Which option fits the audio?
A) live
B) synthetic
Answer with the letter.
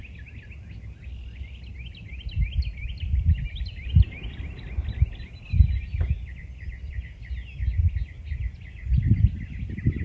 A